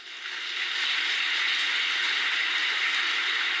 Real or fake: real